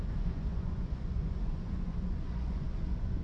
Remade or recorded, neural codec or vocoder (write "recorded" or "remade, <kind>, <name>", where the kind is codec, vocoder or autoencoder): remade, vocoder, Vocos